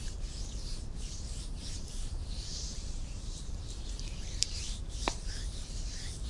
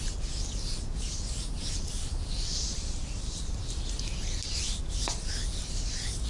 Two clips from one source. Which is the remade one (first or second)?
first